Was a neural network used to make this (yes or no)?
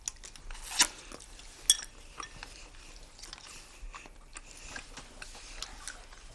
no